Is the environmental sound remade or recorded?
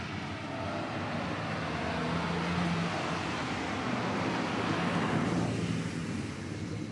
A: recorded